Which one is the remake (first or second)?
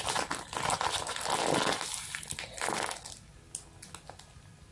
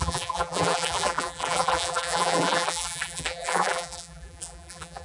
second